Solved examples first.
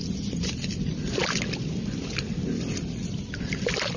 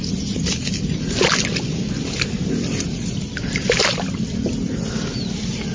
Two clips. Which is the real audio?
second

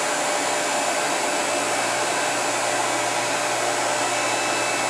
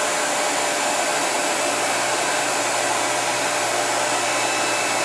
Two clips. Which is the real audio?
first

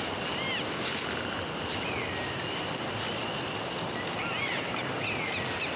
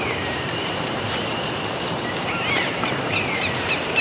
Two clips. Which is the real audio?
first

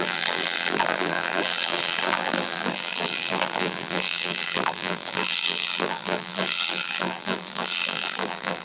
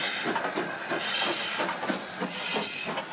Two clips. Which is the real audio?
second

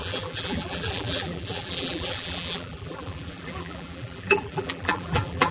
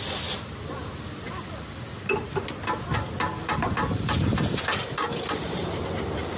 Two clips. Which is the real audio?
second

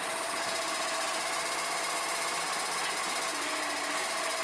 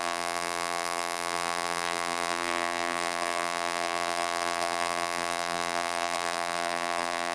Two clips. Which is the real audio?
first